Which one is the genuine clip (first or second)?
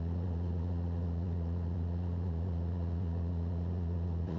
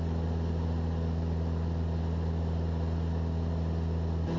second